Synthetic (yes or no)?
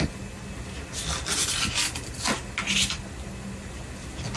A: no